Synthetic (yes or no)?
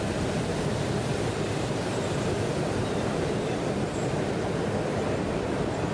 yes